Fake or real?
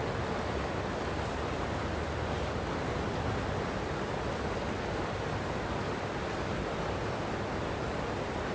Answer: real